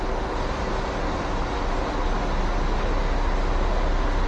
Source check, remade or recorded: recorded